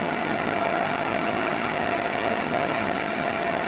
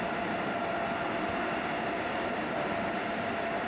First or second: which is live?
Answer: second